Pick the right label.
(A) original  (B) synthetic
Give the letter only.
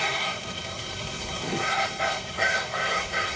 B